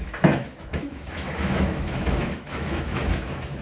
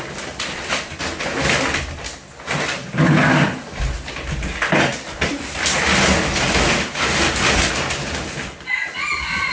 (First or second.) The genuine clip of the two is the second